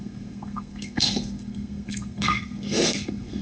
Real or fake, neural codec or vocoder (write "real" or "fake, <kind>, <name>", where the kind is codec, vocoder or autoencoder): fake, codec, SNAC